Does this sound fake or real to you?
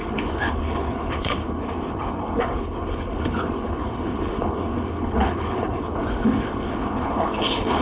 fake